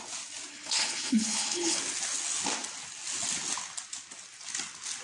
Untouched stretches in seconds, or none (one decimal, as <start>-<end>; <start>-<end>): 0.0-0.5; 1.8-5.0